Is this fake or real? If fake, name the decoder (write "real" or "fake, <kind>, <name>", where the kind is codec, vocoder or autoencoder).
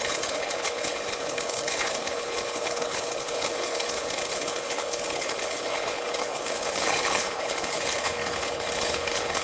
fake, codec, HILCodec